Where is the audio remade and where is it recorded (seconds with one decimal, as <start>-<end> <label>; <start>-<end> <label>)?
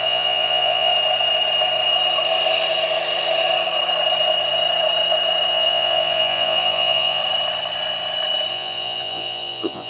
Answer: 0.0-0.9 remade; 0.9-5.5 recorded; 5.5-7.2 remade; 7.2-8.5 recorded; 8.5-9.9 remade